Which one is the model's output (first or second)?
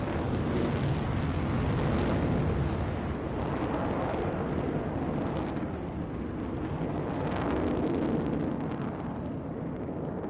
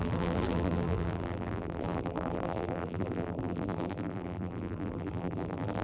second